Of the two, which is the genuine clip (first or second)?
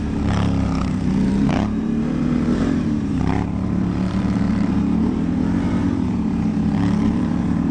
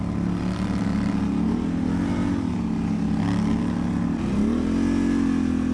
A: second